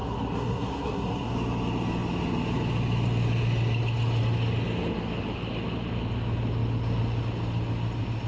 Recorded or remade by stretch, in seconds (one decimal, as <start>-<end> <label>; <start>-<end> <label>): 0.0-1.3 remade; 1.3-8.3 recorded